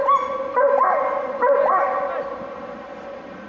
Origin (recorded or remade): recorded